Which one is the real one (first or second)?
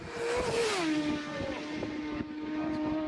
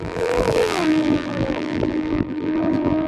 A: first